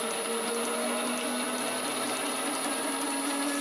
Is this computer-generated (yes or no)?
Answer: no